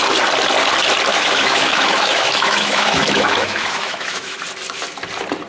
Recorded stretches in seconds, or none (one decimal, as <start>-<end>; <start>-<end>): 0.0-1.1; 4.4-5.5